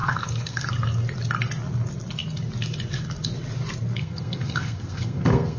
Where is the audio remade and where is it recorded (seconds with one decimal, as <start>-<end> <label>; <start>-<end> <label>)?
0.0-0.7 remade; 0.7-4.0 recorded; 4.0-5.6 remade

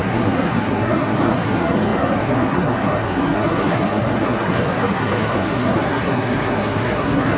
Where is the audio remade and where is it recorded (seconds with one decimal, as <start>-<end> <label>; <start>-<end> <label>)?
0.0-7.4 remade

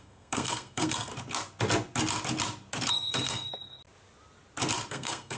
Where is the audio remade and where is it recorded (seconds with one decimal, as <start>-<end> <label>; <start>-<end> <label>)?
0.0-1.1 remade; 1.1-2.9 recorded; 2.9-3.8 remade; 3.8-4.9 recorded; 4.9-5.4 remade

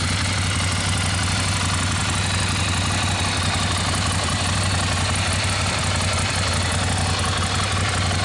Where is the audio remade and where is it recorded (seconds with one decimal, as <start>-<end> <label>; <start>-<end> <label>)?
0.0-8.2 recorded

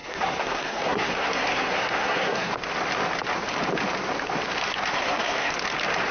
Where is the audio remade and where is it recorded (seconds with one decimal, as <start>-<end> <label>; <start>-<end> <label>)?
0.0-2.5 remade; 2.5-4.9 recorded; 4.9-5.5 remade; 5.5-6.1 recorded